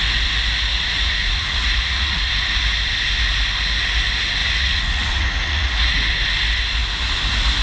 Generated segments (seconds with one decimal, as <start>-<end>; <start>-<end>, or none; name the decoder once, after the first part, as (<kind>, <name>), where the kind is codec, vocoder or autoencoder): 0.7-2.3 (vocoder, Vocos); 4.4-6.1